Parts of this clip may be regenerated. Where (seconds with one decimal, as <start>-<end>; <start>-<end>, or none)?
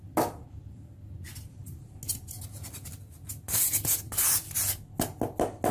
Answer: none